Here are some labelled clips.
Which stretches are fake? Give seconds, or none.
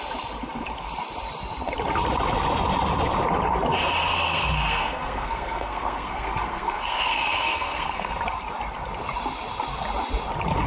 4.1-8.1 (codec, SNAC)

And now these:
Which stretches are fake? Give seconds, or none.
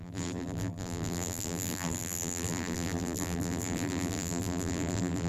0.0-5.3 (vocoder, BigVGAN v2)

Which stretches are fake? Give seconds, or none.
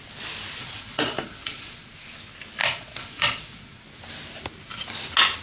0.6-1.9 (vocoder, Vocos); 2.6-3.8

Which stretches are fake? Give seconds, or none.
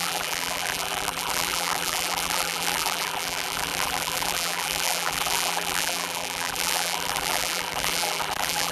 0.0-8.7 (vocoder, BigVGAN v2)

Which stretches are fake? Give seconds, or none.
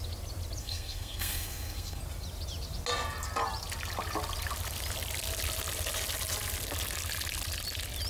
0.6-2.0 (codec, SNAC)